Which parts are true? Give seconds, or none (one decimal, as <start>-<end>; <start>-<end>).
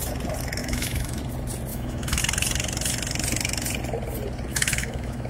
0.0-0.6; 1.2-1.7; 2.2-4.5